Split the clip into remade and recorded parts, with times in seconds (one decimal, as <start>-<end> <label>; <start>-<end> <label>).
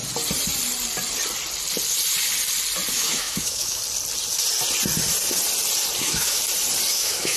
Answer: 0.0-2.9 recorded; 2.9-3.8 remade; 3.8-6.0 recorded; 6.0-6.4 remade; 6.4-6.9 recorded; 6.9-7.4 remade